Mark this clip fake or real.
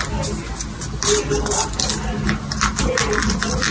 real